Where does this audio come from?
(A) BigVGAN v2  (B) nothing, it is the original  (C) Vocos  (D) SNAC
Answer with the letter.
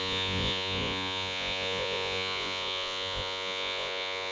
C